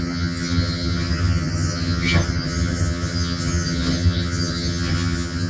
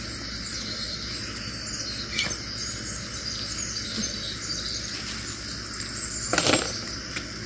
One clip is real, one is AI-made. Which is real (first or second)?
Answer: second